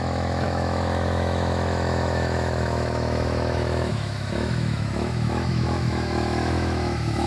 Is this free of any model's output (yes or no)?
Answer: no